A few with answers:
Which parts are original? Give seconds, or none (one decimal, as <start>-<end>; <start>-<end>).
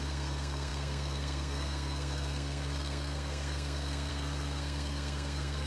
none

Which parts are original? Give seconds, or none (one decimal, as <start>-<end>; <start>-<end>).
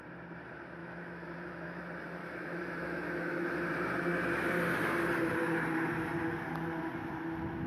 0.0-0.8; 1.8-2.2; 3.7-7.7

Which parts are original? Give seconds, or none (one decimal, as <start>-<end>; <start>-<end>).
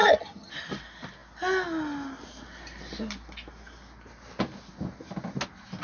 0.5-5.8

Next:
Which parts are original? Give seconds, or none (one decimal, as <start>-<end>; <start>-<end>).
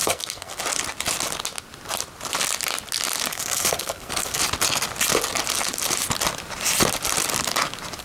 0.6-3.3; 4.4-8.0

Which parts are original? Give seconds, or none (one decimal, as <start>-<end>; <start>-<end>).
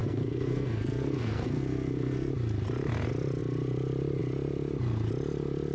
2.3-5.7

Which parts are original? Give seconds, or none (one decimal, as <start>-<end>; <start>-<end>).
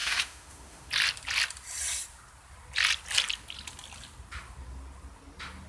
0.9-5.7